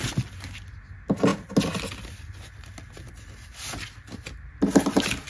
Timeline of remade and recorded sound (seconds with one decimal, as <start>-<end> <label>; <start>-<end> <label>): 0.0-5.3 recorded